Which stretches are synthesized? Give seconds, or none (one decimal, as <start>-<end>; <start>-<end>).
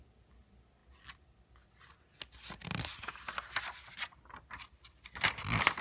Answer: none